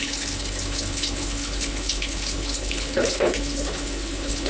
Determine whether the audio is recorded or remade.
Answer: remade